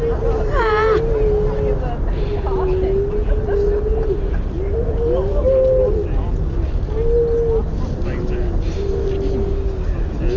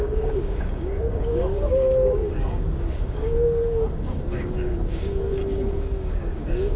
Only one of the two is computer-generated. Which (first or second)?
second